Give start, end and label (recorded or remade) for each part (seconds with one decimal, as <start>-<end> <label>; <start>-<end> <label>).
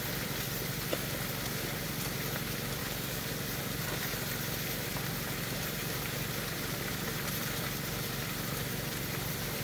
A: 0.0-2.8 recorded; 2.8-3.3 remade; 3.3-9.6 recorded